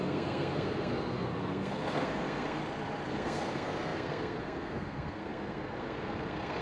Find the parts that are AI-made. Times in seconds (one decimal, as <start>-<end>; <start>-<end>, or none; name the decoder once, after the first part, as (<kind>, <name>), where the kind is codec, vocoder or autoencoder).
0.0-2.6 (codec, SNAC); 3.1-6.6